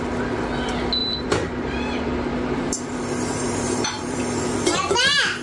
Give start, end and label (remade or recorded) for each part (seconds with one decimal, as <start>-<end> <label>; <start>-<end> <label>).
0.0-1.0 recorded; 1.0-4.2 remade; 4.2-5.4 recorded